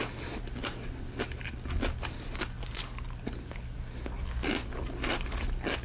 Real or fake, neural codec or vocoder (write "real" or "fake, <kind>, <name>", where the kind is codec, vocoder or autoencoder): real